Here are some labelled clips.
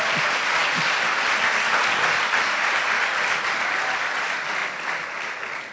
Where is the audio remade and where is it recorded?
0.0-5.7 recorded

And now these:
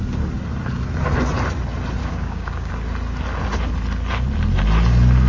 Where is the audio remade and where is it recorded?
0.0-2.0 recorded; 2.0-2.7 remade; 2.7-5.3 recorded

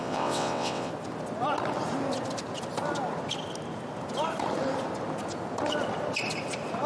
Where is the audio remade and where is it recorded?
0.0-0.9 remade; 0.9-6.9 recorded